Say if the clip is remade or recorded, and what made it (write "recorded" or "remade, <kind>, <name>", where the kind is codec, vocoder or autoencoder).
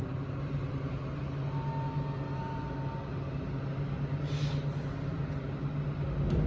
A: recorded